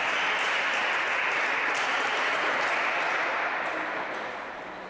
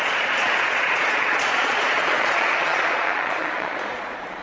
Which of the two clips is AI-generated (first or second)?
second